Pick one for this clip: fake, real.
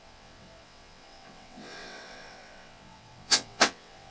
fake